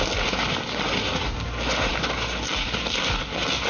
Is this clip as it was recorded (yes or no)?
yes